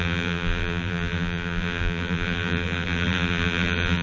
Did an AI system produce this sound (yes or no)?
yes